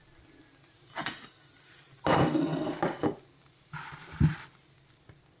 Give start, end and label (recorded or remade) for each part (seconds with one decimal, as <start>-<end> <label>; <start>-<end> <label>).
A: 0.0-5.4 recorded